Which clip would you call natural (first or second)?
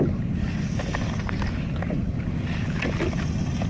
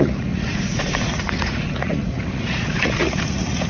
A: first